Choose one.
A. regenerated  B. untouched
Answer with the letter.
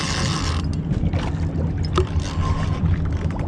B